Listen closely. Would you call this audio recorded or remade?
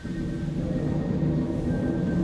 recorded